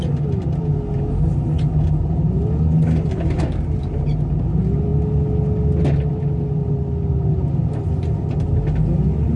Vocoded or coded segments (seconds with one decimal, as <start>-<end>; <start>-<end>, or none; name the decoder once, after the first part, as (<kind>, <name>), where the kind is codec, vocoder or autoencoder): none